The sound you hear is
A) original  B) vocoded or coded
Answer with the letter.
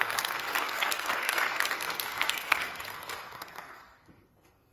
B